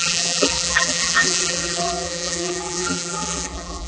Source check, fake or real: fake